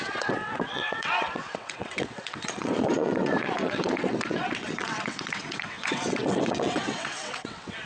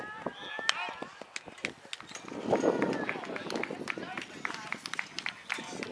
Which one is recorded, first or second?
second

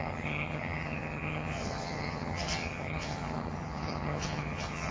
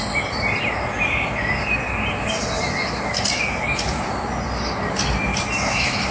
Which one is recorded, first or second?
second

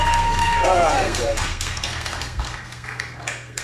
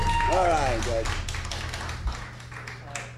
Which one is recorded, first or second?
second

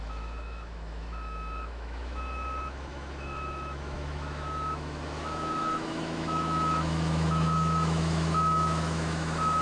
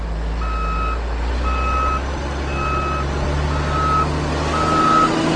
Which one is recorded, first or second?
second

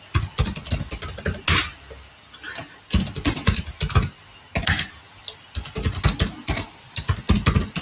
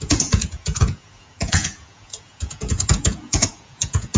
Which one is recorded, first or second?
first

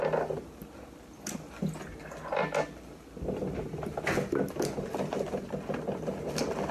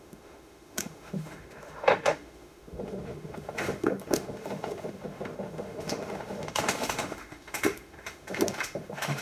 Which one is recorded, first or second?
first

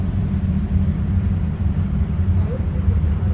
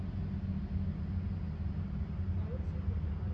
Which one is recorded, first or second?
second